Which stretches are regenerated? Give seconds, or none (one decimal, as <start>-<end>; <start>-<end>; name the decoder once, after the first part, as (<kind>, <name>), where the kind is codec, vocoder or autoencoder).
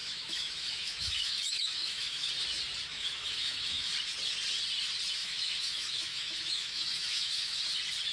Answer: 0.0-2.3 (autoencoder, DAC-VAE); 2.9-3.9; 5.2-7.6